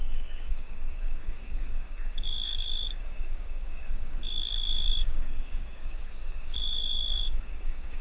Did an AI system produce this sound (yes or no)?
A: yes